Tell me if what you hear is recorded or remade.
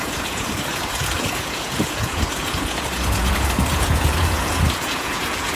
remade